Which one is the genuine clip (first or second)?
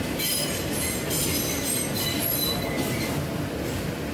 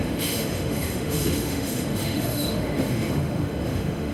first